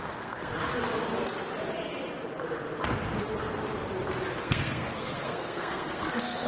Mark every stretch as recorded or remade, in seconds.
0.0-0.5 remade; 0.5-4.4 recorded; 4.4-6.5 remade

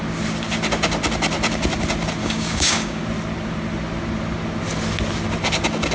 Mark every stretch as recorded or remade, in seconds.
0.0-2.2 recorded; 2.2-3.0 remade; 3.0-5.9 recorded

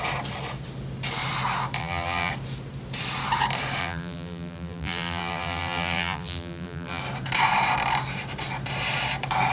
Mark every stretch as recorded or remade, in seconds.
0.0-1.8 recorded; 1.8-2.3 remade; 2.3-3.8 recorded; 3.8-7.0 remade; 7.0-9.5 recorded

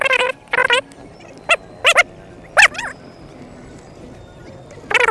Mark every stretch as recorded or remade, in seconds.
0.0-0.6 remade; 0.6-3.7 recorded; 3.7-4.4 remade; 4.4-5.1 recorded

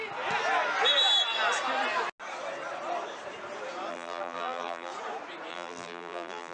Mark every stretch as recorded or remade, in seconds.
0.0-3.9 recorded; 3.9-4.9 remade; 4.9-5.5 recorded; 5.5-6.5 remade

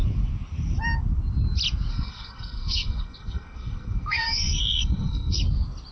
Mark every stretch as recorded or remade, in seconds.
0.0-1.9 recorded; 1.9-5.4 remade; 5.4-5.9 recorded